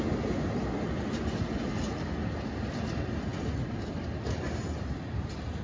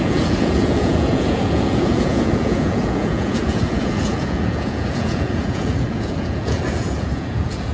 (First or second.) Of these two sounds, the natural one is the first